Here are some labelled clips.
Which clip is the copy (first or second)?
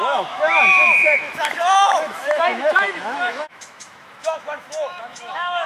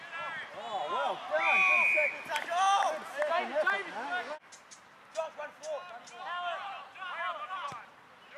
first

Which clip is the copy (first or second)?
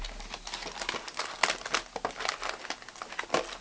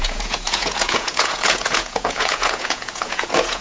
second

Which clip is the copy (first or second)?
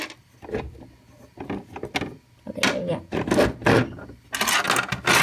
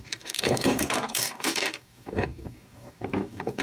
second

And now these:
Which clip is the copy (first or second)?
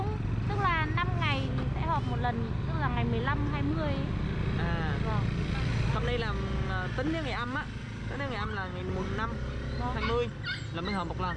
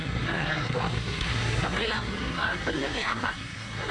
second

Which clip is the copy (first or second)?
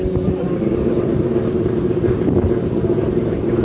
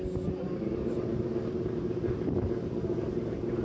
first